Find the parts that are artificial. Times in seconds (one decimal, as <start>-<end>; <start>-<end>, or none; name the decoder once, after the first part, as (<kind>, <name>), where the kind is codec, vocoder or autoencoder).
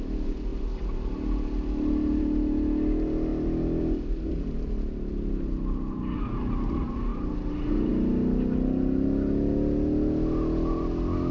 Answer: 3.3-6.0 (vocoder, BigVGAN v2)